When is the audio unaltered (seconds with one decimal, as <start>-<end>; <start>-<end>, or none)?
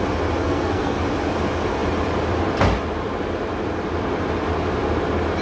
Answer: 0.0-0.4; 1.0-5.4